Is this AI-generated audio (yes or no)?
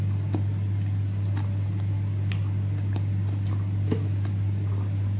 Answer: no